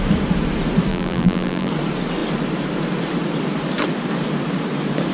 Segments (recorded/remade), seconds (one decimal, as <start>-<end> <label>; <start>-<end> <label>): 0.0-0.9 recorded; 0.9-1.7 remade; 1.7-5.1 recorded